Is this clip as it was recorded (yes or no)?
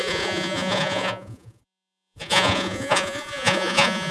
no